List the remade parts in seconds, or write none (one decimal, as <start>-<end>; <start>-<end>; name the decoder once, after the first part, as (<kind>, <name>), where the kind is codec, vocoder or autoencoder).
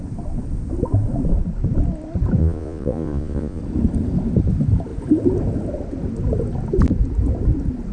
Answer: 2.4-3.6 (vocoder, Vocos)